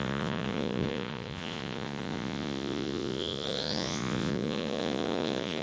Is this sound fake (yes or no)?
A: yes